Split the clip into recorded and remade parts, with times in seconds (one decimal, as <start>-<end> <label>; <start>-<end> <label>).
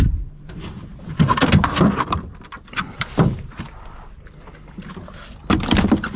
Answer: 0.0-1.4 recorded; 1.4-4.5 remade; 4.5-6.2 recorded